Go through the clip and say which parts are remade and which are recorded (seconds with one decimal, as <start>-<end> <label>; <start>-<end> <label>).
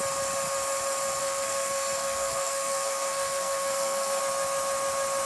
0.0-1.2 recorded; 1.2-4.2 remade; 4.2-5.3 recorded